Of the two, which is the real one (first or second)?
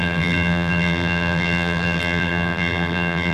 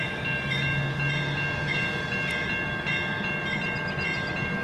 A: second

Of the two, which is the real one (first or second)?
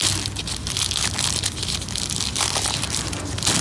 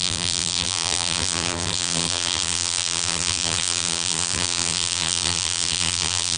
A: first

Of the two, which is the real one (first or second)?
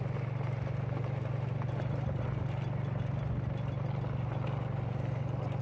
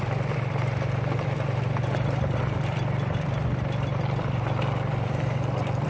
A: first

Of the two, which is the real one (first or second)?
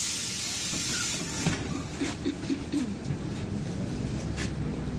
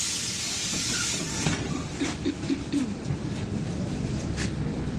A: first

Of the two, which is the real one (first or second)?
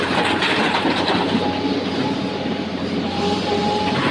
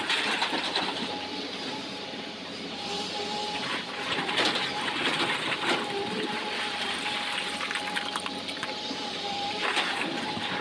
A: first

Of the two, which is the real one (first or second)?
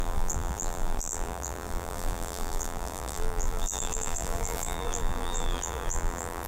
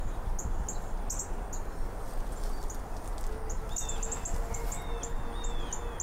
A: second